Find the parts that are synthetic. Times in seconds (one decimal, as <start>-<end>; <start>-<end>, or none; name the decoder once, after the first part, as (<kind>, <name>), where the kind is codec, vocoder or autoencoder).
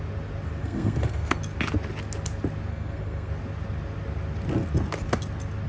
0.6-1.4 (codec, SNAC); 2.7-3.3